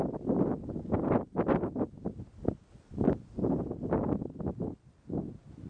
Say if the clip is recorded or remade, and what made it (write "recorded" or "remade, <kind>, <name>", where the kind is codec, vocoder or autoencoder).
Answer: recorded